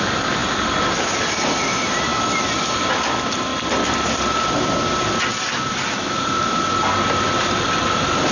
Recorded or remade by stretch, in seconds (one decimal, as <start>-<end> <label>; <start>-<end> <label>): 0.0-2.1 remade; 2.1-2.8 recorded; 2.8-3.5 remade; 3.5-5.0 recorded; 5.0-8.3 remade